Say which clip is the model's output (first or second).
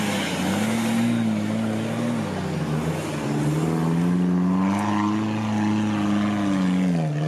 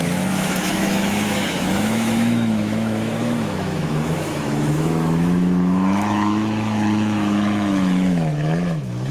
second